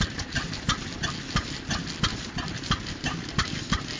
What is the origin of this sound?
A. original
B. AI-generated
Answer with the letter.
A